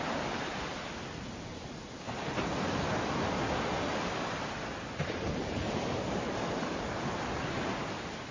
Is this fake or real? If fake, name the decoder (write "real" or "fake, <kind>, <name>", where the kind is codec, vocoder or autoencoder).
real